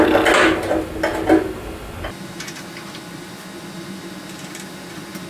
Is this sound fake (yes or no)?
no